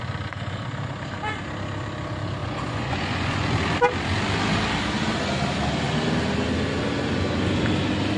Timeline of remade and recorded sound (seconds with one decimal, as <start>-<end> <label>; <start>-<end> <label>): 0.0-2.4 recorded; 2.4-3.5 remade; 3.5-8.2 recorded